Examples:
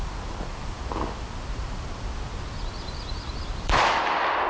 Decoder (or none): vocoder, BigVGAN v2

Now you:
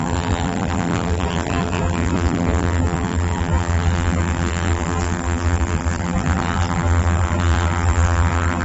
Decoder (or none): vocoder, BigVGAN v2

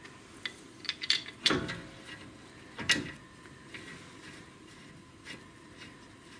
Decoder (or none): none